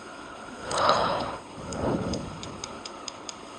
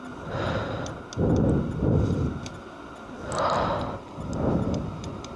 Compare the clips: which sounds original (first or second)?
second